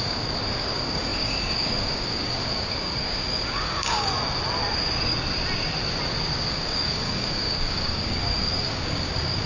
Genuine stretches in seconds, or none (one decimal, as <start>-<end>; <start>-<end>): 4.1-6.5